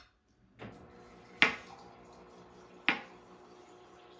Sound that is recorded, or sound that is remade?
recorded